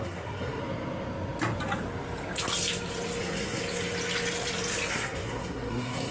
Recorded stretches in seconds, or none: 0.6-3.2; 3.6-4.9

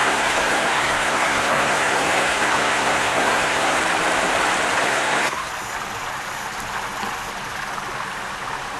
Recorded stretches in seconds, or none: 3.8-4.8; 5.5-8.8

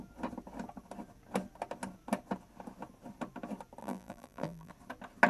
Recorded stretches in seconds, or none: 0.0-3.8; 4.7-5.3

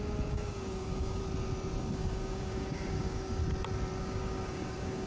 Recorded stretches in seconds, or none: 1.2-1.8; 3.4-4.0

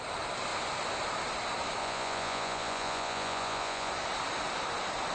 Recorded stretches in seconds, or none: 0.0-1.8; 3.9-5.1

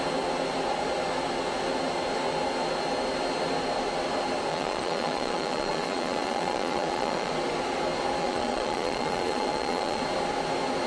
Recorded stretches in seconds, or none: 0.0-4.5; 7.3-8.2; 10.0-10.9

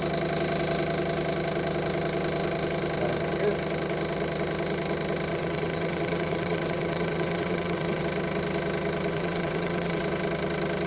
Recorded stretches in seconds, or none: 0.0-5.3; 8.0-9.1; 10.0-10.9

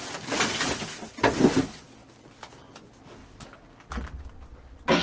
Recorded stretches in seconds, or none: 0.0-5.0